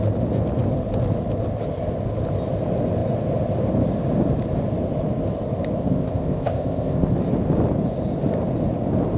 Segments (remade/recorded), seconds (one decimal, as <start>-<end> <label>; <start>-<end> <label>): 0.0-5.8 recorded; 5.8-7.2 remade; 7.2-9.2 recorded